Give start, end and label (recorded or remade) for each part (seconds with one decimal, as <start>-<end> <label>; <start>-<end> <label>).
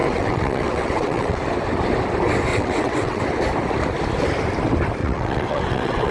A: 0.0-1.4 remade; 1.4-2.5 recorded; 2.5-3.2 remade; 3.2-5.0 recorded; 5.0-6.1 remade